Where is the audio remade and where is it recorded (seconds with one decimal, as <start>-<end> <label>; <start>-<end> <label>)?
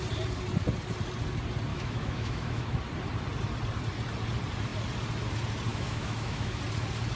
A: 0.0-1.7 recorded; 1.7-2.8 remade; 2.8-5.7 recorded; 5.7-6.6 remade; 6.6-7.2 recorded